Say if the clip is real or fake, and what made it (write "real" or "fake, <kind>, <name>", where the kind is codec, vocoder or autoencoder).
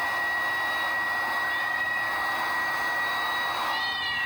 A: real